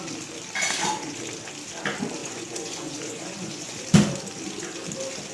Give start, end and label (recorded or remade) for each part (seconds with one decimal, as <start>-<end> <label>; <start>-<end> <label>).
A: 0.0-2.2 recorded; 2.2-3.8 remade; 3.8-5.3 recorded